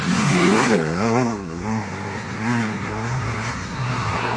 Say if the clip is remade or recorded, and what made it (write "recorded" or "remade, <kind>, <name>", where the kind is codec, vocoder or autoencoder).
remade, codec, SNAC